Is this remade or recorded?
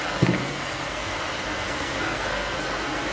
remade